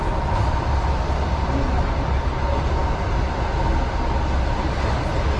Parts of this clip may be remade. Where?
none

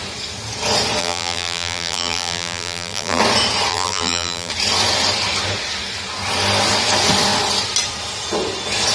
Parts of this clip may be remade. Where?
1.0-3.2; 3.7-4.5

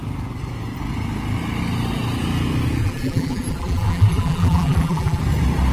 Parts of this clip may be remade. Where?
2.8-5.2

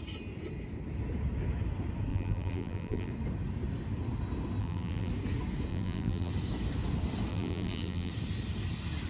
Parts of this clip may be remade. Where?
2.1-3.1; 4.6-5.1; 5.7-6.3; 7.3-8.1

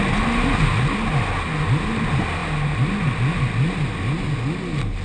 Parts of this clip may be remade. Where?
2.4-2.9